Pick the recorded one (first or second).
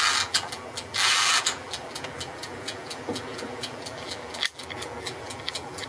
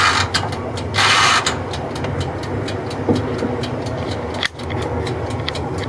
second